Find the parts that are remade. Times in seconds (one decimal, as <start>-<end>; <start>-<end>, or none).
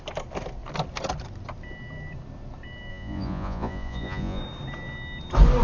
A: 2.9-4.4